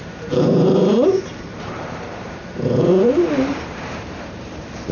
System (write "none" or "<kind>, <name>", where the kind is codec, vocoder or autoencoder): vocoder, BigVGAN v2